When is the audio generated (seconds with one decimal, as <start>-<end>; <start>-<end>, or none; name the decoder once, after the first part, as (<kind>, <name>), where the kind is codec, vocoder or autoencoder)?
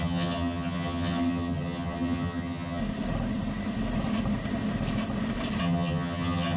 0.0-2.8 (vocoder, HiFi-GAN); 5.6-6.6